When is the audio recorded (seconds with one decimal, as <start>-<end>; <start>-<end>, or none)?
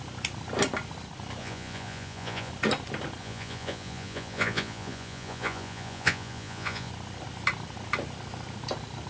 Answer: 0.0-1.4; 2.5-3.2; 6.9-9.1